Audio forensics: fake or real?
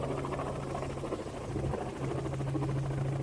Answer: real